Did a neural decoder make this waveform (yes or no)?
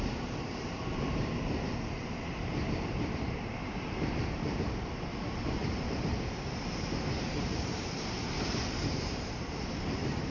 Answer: yes